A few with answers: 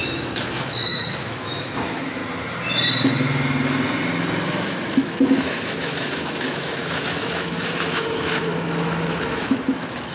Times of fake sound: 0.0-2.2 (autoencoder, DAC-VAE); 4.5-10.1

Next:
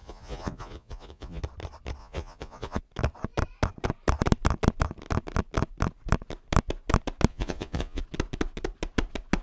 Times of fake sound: 0.0-1.4 (vocoder, Vocos); 2.0-2.8; 7.3-8.0

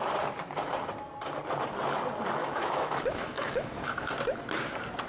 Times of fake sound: 2.4-4.1 (autoencoder, DAC-VAE)

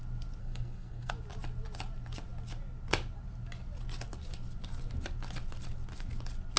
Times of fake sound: 0.4-1.1 (codec, SNAC)

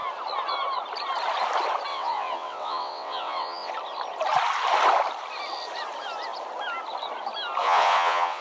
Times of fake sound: 1.9-3.7 (vocoder, WaveNeXt); 7.6-8.4

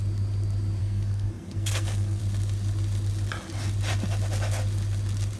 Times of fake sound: 0.8-2.2 (codec, SNAC)

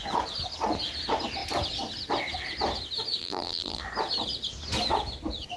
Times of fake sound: 3.2-3.8 (vocoder, BigVGAN v2)

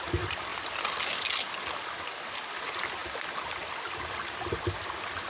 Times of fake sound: none